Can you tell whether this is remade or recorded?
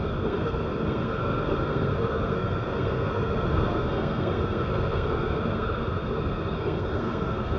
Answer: remade